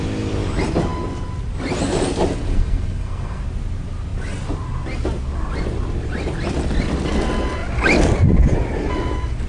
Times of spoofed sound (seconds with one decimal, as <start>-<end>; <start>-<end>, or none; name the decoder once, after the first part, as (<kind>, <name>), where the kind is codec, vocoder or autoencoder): 2.5-3.4 (codec, SNAC)